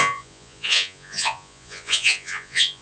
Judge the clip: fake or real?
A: fake